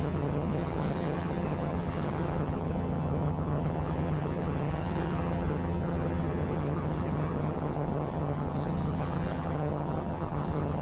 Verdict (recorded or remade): remade